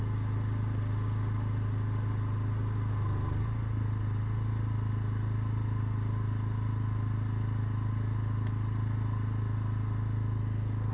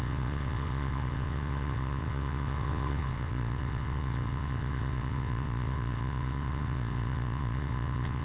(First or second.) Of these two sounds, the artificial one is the second